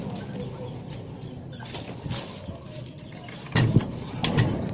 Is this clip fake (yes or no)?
yes